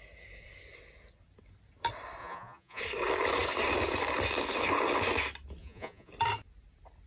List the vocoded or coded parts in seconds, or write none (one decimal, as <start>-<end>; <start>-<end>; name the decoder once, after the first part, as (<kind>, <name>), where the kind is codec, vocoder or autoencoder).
2.2-2.8 (vocoder, Vocos); 5.6-6.1

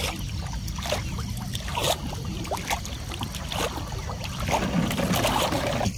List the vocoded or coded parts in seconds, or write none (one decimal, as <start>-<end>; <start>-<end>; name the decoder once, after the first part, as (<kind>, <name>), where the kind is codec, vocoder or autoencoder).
none

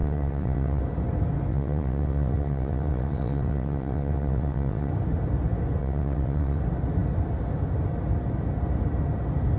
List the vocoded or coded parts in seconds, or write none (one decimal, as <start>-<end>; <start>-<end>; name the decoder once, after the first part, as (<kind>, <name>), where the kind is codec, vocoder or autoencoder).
0.0-0.8 (vocoder, WaveNeXt); 1.5-4.9; 5.8-6.6

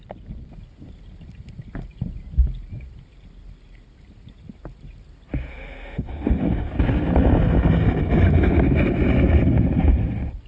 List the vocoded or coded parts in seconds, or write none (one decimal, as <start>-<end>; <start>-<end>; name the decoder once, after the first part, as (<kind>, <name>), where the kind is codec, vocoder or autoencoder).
5.5-6.7 (autoencoder, DAC-VAE)

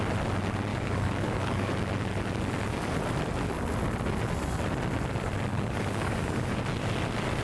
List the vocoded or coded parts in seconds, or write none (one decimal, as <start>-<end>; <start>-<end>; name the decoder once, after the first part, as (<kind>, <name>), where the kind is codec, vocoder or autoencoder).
0.7-1.7 (codec, DAC); 5.5-6.6

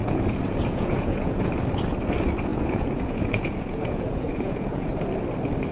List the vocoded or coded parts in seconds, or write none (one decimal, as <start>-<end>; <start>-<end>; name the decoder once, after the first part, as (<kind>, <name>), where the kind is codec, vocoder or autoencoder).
0.0-1.5 (vocoder, Vocos); 2.5-4.9